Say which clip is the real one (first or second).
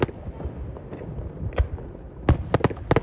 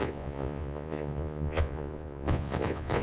first